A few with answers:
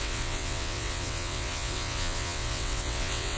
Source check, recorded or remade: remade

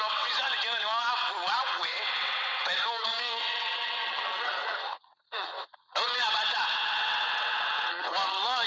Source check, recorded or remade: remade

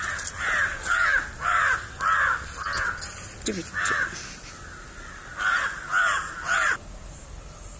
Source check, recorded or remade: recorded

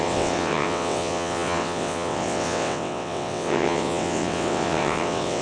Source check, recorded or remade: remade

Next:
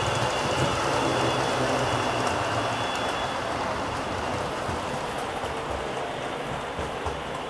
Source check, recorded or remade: recorded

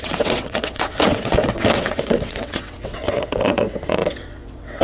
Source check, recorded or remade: remade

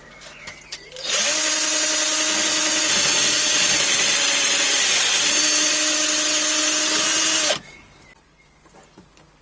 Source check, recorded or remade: recorded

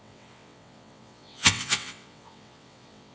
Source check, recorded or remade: remade